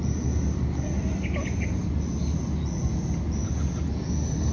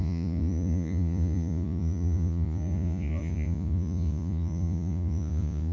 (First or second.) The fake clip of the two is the second